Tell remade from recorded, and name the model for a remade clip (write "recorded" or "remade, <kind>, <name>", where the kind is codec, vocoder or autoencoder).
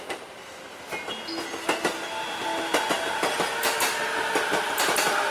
recorded